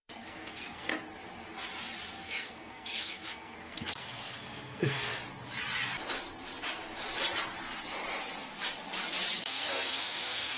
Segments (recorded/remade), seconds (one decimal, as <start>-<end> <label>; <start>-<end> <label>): 0.0-0.9 remade; 0.9-2.2 recorded; 2.2-5.2 remade; 5.2-9.4 recorded; 9.4-10.6 remade